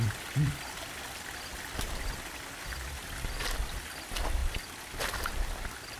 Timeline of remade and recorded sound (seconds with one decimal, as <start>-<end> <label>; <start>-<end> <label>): 0.0-1.5 recorded; 1.5-3.4 remade; 3.4-6.0 recorded